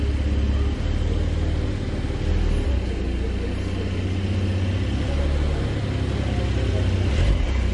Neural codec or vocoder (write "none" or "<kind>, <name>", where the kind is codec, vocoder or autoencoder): none